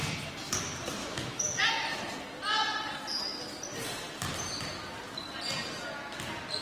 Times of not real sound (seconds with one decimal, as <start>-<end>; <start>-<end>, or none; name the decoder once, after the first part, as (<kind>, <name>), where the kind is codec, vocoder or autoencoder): 1.0-1.6 (autoencoder, DAC-VAE)